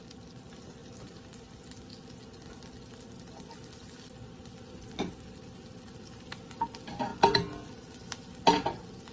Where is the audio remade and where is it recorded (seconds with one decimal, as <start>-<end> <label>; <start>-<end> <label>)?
0.0-9.1 recorded